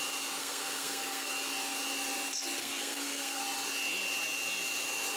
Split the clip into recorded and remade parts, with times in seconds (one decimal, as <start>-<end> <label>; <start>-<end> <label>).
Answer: 0.0-0.4 recorded; 0.4-1.3 remade; 1.3-2.6 recorded; 2.6-3.4 remade; 3.4-5.2 recorded